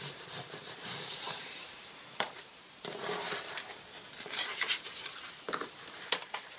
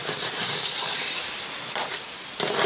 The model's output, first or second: first